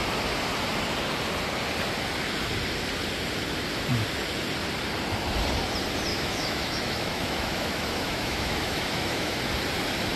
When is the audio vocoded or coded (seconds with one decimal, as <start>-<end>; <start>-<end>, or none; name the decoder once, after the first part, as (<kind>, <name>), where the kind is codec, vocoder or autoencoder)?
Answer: 6.1-9.4 (autoencoder, DAC-VAE)